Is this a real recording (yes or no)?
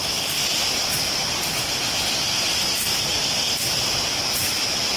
yes